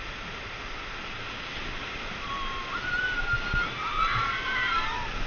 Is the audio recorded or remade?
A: recorded